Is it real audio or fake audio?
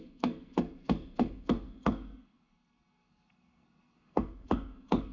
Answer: fake